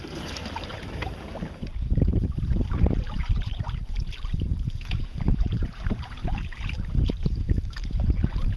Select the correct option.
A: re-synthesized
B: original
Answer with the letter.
A